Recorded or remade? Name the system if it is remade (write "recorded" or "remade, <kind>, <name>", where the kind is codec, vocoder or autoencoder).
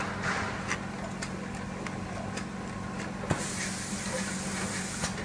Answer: recorded